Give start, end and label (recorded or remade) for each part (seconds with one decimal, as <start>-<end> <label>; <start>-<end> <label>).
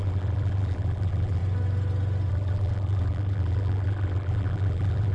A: 0.0-1.4 remade; 1.4-2.3 recorded; 2.3-5.1 remade